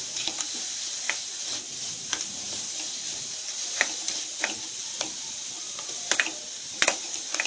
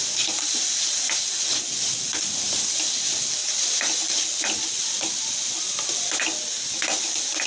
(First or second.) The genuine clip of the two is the second